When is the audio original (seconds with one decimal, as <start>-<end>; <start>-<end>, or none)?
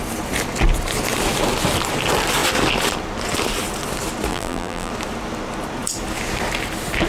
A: 0.0-4.3; 4.9-7.1